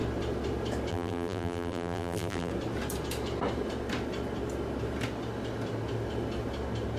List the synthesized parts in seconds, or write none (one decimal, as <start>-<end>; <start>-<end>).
0.9-2.5